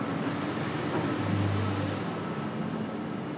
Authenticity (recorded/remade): recorded